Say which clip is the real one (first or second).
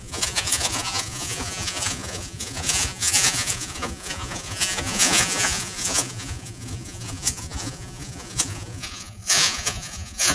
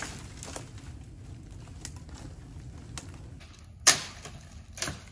second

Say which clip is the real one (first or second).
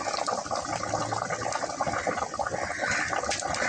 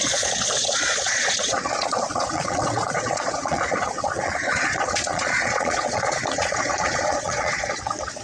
first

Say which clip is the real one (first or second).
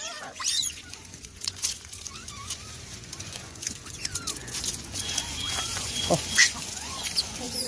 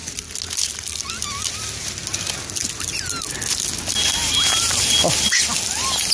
second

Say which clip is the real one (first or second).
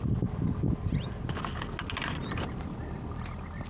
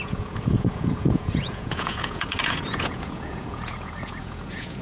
first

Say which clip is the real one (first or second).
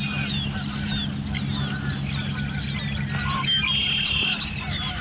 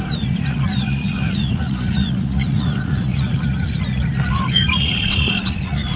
first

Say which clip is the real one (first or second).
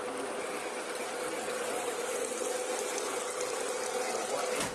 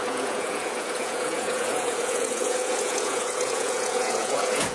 first